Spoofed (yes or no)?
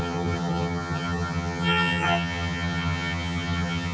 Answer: yes